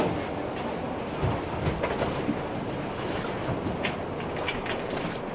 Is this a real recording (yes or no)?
yes